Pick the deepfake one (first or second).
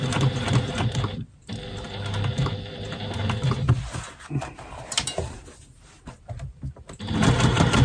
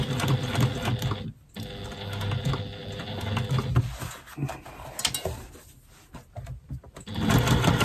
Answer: first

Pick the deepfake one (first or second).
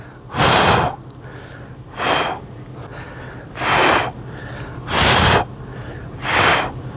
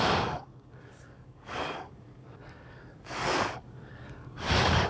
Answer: second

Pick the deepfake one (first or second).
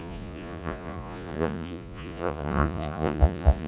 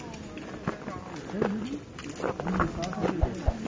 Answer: first